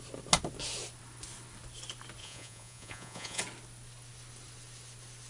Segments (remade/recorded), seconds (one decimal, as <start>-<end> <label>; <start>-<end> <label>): 0.0-2.2 recorded; 2.2-3.4 remade; 3.4-5.3 recorded